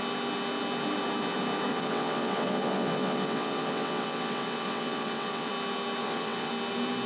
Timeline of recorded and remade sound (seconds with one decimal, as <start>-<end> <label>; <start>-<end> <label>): 0.0-1.7 recorded; 1.7-5.5 remade; 5.5-6.0 recorded; 6.0-6.5 remade; 6.5-7.1 recorded